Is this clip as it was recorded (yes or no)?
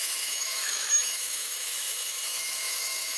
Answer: no